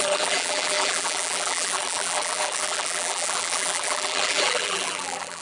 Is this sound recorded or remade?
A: remade